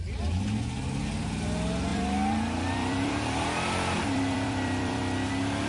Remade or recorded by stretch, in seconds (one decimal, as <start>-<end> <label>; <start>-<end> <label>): 0.0-1.9 recorded; 1.9-5.3 remade; 5.3-5.7 recorded